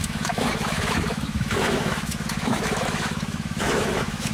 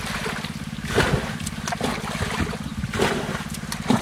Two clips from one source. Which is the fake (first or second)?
first